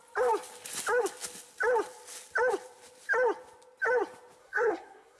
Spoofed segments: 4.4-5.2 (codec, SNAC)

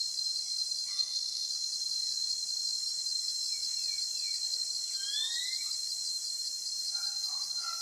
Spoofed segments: 0.9-1.5 (codec, SNAC)

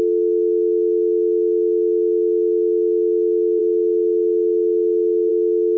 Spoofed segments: none

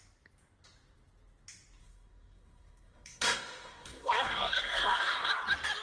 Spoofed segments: 1.8-5.3 (codec, SNAC)

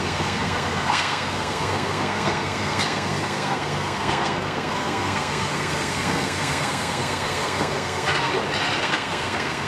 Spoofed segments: 0.0-8.3 (codec, SNAC); 8.8-9.7

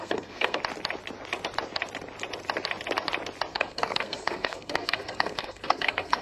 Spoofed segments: 0.0-0.6 (codec, SNAC); 3.5-6.2